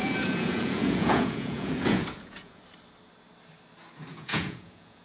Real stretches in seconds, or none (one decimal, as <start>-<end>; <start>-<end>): 2.6-4.1